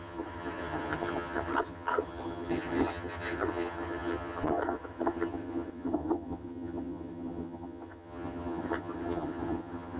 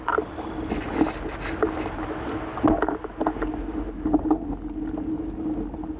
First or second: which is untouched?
second